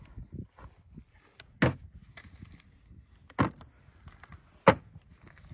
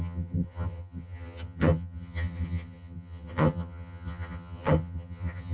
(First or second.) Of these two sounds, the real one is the first